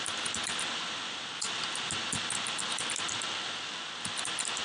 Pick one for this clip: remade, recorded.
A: recorded